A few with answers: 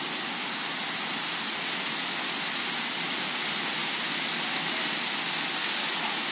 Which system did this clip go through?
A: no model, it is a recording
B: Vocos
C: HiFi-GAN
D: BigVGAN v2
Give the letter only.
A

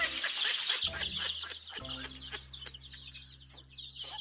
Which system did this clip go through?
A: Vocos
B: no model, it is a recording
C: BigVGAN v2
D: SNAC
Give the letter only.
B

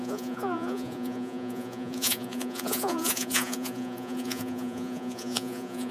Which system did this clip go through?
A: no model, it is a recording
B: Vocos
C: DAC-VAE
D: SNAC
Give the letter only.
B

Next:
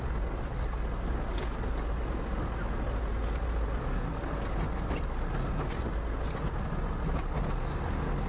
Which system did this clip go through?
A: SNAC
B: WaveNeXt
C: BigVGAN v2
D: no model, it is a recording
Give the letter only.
D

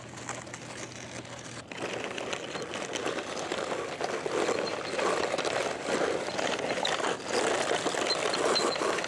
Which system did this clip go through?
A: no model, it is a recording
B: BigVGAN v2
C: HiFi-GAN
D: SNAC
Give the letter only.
A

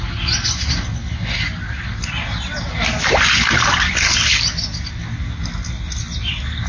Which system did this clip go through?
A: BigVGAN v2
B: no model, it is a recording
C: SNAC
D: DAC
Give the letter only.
B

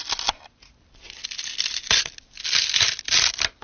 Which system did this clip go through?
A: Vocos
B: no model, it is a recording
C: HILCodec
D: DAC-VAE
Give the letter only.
B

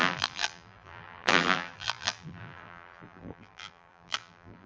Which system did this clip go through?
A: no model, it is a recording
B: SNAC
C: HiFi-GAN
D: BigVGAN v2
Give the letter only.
D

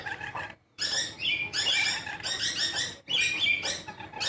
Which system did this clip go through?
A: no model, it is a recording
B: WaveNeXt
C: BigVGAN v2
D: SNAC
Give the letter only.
A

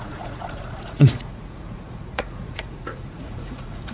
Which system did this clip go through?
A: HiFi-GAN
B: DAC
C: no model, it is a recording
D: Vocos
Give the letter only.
D